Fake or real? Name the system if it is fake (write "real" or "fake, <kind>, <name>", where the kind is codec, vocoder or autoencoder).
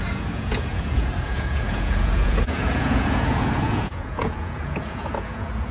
fake, vocoder, Vocos